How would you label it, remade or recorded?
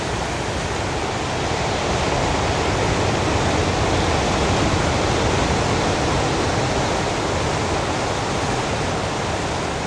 recorded